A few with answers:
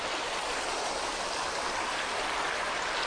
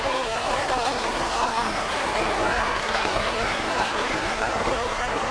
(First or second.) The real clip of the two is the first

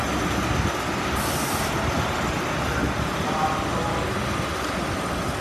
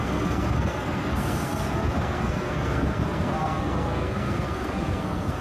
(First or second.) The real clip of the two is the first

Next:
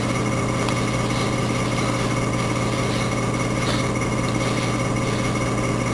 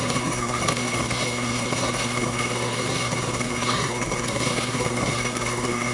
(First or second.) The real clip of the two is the first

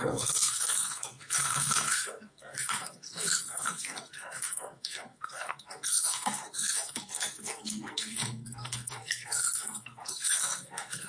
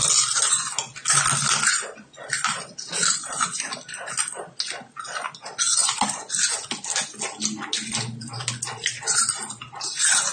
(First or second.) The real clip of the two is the second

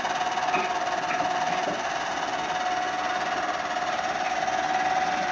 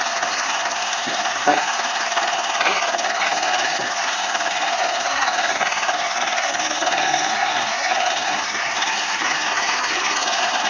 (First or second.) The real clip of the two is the first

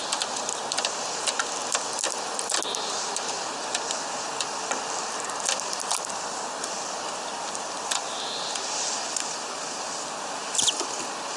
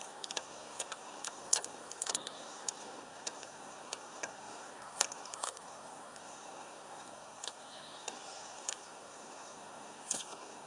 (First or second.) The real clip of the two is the first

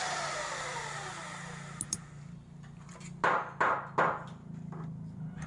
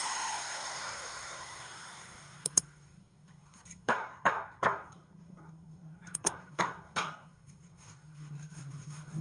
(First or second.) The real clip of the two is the first